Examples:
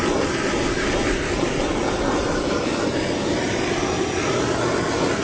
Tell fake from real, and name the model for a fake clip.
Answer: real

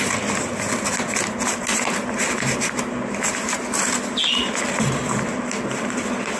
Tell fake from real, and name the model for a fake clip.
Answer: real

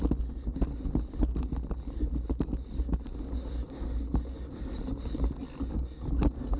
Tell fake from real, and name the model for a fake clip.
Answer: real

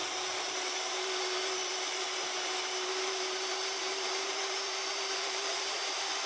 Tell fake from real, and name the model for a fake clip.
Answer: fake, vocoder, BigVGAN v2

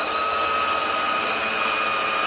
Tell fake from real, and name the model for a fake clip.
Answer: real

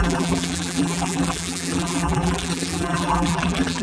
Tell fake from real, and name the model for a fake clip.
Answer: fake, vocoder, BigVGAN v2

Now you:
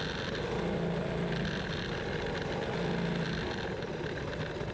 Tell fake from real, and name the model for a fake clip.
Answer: real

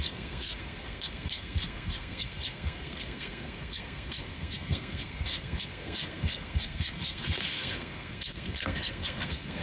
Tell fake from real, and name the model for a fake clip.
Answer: fake, codec, SNAC